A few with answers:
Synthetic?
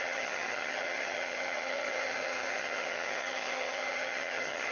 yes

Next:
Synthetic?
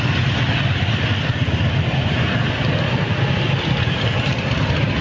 no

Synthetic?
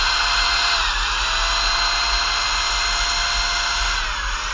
no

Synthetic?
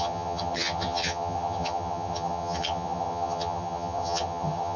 yes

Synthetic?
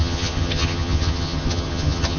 yes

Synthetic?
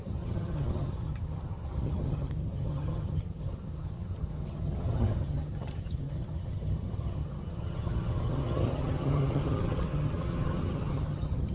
yes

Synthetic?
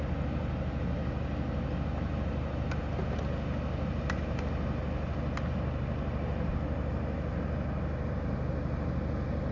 no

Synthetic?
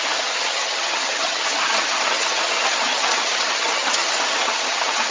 yes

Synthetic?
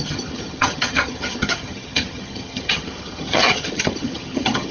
yes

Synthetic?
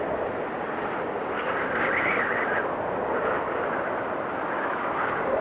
no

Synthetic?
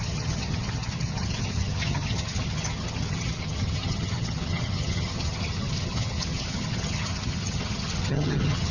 yes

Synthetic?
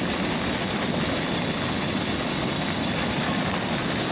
no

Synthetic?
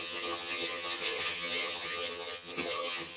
yes